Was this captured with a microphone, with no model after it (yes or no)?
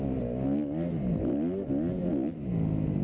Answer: yes